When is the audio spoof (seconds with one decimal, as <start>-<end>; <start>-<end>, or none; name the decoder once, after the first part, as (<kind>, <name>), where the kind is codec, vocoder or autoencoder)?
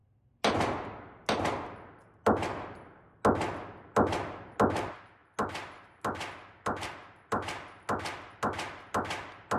none